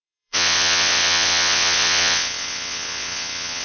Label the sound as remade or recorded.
remade